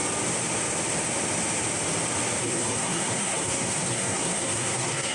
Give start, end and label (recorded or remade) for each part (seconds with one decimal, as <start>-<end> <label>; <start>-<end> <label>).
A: 0.0-2.4 recorded; 2.4-5.1 remade